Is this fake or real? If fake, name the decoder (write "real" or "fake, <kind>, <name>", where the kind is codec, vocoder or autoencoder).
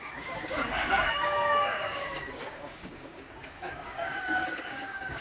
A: fake, codec, DAC